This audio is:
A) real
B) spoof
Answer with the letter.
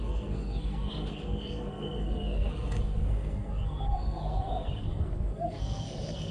B